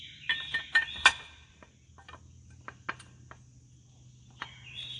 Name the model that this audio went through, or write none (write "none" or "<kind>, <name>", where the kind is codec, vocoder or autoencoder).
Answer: none